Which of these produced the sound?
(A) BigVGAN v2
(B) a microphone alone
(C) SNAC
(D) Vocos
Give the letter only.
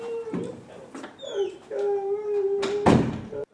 A